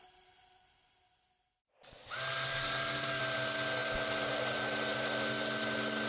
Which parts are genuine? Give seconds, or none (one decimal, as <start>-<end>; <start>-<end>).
0.0-2.5; 3.2-6.1